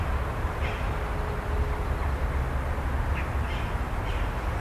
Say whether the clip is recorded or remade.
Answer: recorded